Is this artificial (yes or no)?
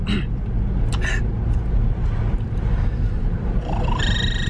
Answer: no